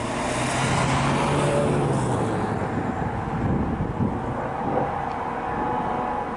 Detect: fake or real real